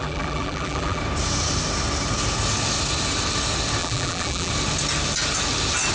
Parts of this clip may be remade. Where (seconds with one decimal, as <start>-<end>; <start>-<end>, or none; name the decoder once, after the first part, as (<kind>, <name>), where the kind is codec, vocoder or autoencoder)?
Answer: 0.0-1.0 (vocoder, BigVGAN v2); 3.8-4.5